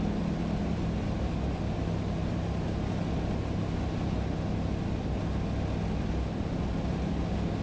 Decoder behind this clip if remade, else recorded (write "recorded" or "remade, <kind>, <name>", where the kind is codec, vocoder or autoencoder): recorded